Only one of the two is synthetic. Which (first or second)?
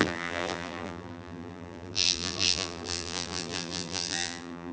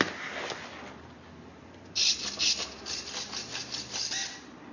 first